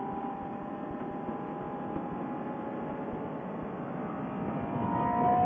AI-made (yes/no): no